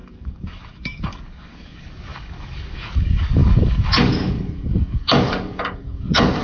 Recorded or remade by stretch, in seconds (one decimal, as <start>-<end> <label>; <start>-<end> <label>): 0.0-6.4 remade